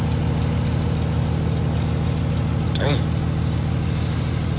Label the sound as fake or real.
real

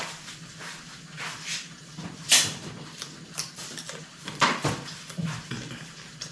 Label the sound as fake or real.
fake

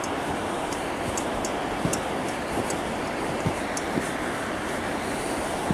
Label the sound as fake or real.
real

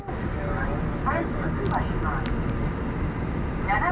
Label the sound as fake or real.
real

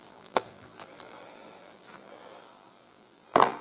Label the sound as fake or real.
fake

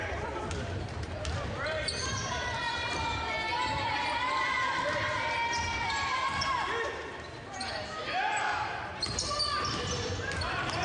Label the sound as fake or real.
fake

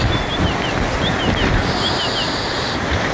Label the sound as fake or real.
fake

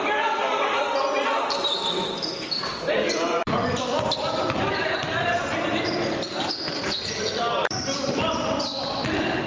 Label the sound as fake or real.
fake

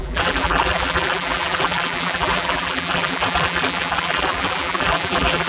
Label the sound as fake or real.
fake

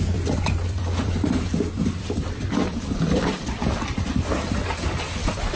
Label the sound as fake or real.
fake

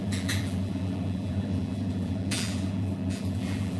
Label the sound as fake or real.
fake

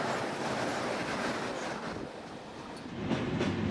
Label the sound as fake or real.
real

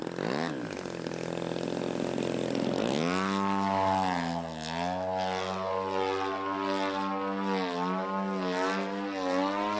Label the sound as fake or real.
real